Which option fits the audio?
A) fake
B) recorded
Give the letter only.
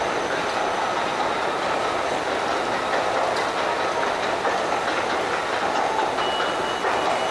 B